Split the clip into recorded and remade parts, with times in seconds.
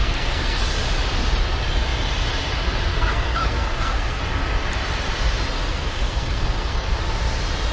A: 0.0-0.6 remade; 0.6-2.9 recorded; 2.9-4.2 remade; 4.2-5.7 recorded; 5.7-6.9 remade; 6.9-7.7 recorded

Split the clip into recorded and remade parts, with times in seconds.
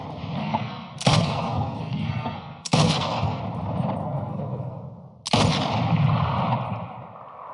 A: 0.0-0.4 recorded; 0.4-3.4 remade; 3.4-4.0 recorded; 4.0-4.8 remade; 4.8-7.5 recorded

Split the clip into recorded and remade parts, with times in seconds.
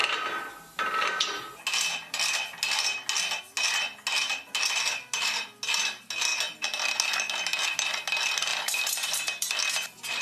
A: 0.0-8.5 recorded; 8.5-10.2 remade